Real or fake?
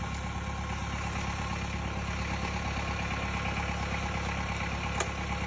real